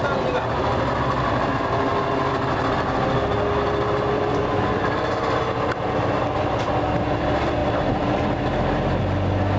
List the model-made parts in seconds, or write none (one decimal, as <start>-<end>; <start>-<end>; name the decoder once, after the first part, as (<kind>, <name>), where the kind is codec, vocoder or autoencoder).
none